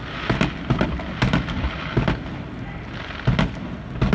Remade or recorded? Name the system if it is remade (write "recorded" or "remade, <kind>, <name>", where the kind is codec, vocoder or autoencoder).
recorded